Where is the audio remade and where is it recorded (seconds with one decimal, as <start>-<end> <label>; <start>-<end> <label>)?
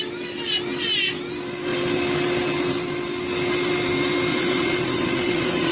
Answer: 0.0-4.3 recorded; 4.3-5.7 remade